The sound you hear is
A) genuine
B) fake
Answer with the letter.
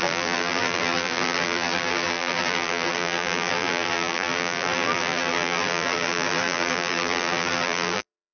B